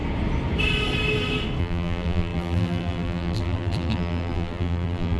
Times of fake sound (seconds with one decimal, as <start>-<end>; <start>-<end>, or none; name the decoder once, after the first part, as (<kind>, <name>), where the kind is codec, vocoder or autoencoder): 1.6-5.2 (vocoder, BigVGAN v2)